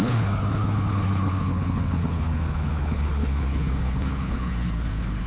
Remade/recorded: remade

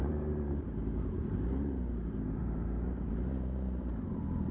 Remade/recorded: remade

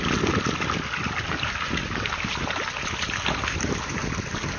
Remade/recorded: recorded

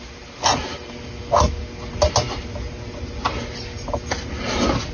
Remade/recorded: recorded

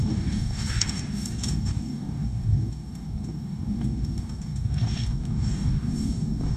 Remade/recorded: remade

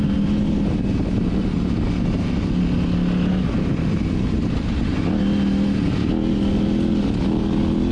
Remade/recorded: recorded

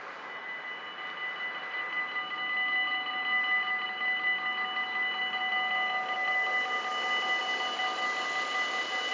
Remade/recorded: recorded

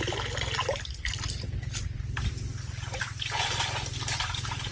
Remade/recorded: recorded